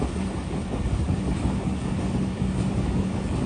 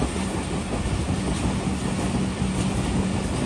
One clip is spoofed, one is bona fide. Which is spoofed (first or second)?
first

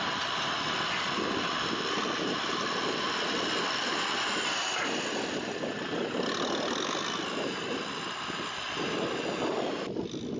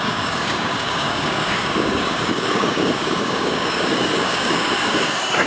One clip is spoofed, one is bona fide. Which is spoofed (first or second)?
second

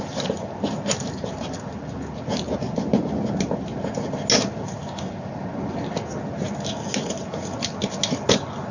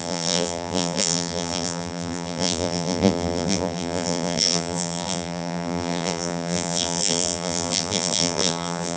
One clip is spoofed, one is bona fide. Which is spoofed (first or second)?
second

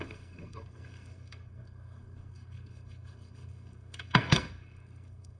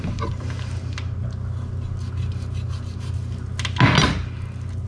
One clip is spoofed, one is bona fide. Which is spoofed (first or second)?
first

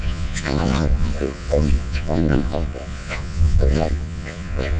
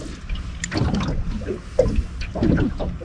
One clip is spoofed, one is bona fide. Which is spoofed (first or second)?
first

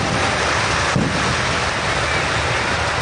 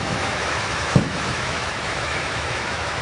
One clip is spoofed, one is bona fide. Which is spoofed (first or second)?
second